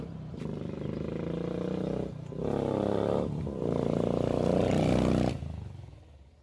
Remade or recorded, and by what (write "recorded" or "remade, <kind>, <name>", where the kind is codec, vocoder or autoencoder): recorded